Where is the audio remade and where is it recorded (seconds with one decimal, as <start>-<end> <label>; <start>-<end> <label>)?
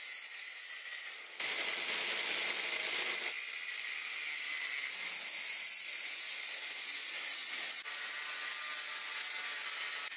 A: 0.0-10.2 recorded